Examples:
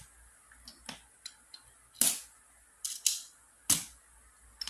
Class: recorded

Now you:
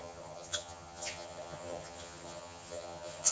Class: remade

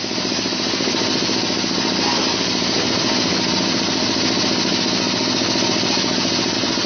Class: recorded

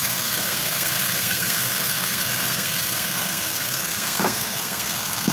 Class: remade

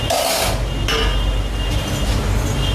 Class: recorded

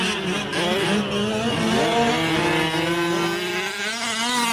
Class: recorded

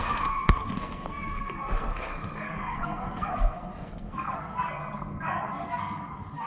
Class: remade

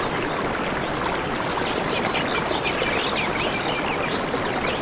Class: recorded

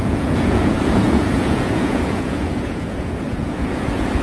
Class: remade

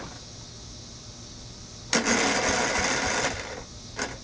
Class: recorded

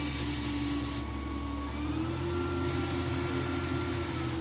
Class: recorded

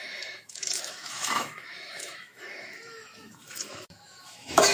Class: remade